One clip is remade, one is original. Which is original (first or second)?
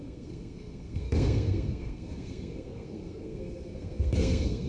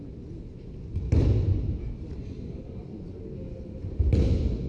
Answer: second